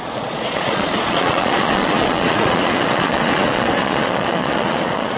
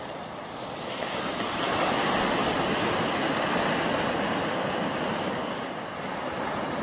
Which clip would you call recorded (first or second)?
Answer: second